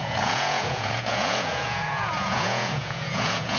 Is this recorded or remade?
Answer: remade